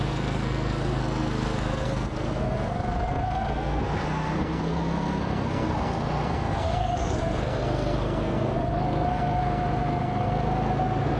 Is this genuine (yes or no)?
no